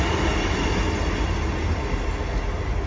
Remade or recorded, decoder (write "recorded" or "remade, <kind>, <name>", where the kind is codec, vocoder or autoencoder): recorded